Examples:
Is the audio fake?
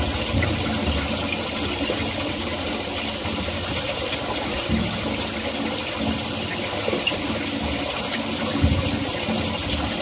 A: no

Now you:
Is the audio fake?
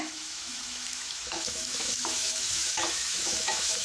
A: yes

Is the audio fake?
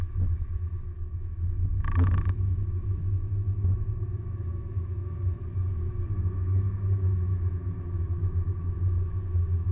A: yes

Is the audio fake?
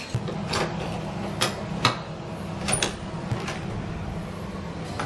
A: no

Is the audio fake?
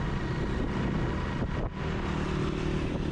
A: no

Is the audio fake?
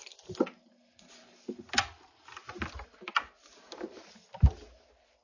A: no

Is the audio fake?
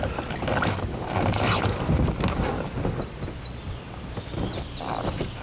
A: no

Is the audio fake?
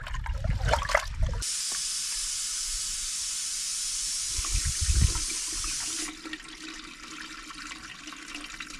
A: no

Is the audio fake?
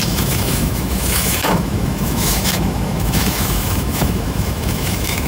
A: yes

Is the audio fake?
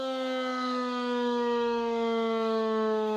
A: yes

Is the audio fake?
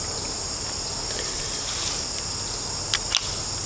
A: no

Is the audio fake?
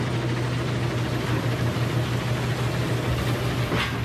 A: no